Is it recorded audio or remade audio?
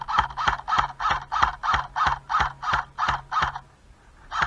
recorded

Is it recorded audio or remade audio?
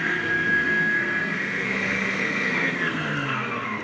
remade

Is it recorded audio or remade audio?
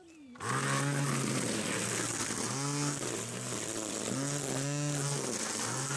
recorded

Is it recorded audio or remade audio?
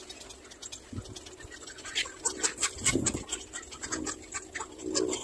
recorded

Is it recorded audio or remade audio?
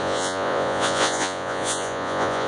remade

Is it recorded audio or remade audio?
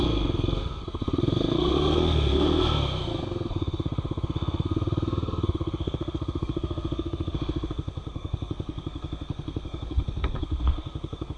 remade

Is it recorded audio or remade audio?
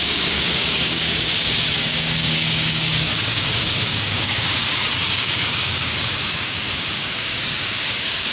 remade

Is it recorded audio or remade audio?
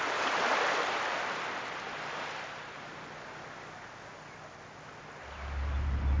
recorded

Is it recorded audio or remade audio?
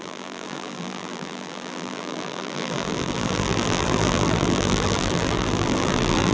remade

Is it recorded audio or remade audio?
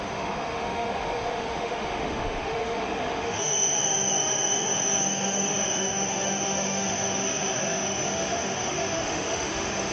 remade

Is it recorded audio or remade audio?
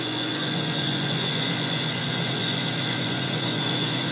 remade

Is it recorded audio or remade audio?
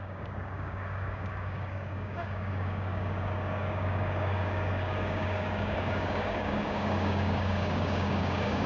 remade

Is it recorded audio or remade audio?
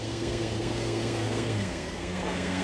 remade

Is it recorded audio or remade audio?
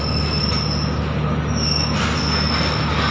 recorded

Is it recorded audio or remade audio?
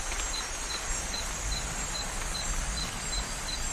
recorded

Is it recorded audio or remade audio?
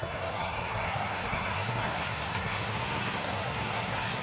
remade